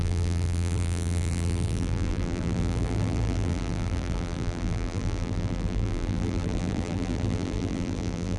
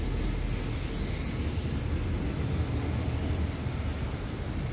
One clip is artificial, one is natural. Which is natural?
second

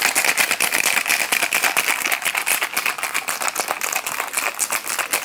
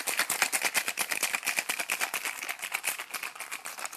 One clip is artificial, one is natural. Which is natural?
first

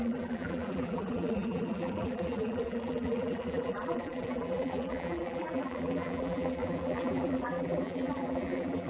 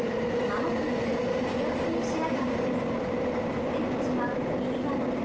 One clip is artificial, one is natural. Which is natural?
second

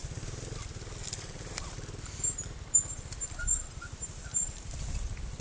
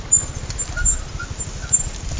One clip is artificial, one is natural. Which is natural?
second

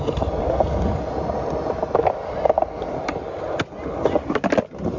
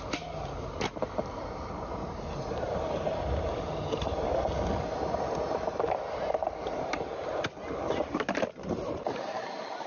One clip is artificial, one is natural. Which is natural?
first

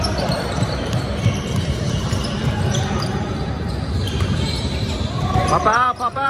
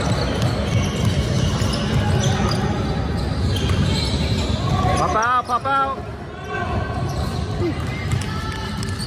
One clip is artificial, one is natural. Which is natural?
second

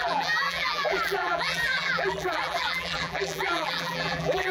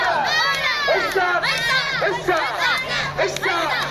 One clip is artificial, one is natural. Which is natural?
second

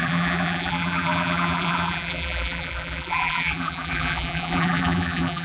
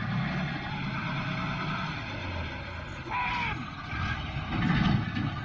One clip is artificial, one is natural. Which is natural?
second